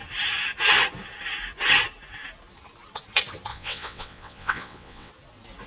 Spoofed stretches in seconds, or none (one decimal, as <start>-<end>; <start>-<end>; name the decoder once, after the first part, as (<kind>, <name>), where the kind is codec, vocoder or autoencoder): 3.5-5.1 (vocoder, WaveNeXt)